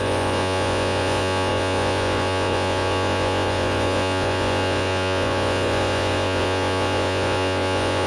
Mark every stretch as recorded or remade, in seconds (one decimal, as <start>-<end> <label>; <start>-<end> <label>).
0.0-8.1 remade